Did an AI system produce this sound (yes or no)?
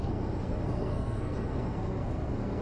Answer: yes